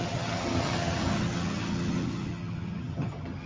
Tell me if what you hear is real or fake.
fake